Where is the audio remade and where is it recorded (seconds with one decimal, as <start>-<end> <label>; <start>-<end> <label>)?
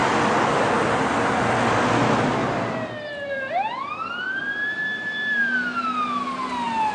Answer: 0.0-6.9 recorded